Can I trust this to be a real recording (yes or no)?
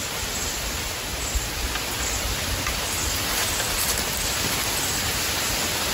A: yes